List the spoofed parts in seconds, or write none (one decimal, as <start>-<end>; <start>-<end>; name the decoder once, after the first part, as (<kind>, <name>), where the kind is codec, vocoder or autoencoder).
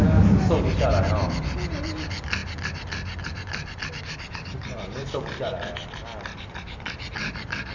4.6-5.4 (vocoder, BigVGAN v2)